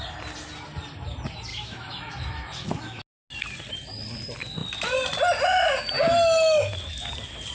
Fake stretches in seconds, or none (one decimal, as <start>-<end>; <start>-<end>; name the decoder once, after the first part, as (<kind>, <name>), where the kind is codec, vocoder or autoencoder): 1.5-3.0 (autoencoder, DAC-VAE)